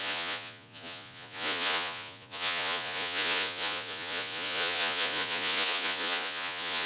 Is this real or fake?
fake